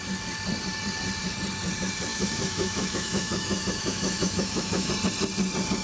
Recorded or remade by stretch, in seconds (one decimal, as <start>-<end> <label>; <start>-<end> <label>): 0.0-2.1 recorded; 2.1-4.9 remade; 4.9-5.8 recorded